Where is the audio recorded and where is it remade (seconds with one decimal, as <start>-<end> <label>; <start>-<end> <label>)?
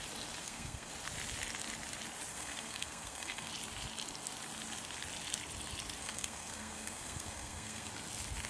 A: 0.0-0.4 recorded; 0.4-0.9 remade; 0.9-2.3 recorded; 2.3-3.5 remade; 3.5-6.0 recorded; 6.0-7.9 remade; 7.9-8.5 recorded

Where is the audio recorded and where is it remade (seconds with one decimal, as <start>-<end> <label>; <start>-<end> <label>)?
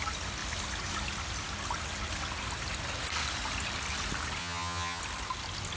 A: 0.0-4.4 recorded; 4.4-5.0 remade; 5.0-5.8 recorded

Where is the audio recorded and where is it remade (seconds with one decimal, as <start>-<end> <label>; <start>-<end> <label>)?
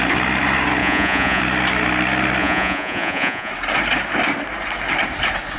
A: 0.0-0.8 recorded; 0.8-1.4 remade; 1.4-2.4 recorded; 2.4-3.5 remade; 3.5-5.6 recorded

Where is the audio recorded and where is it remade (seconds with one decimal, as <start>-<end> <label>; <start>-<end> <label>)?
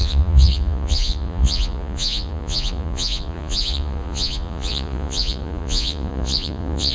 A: 0.0-6.9 remade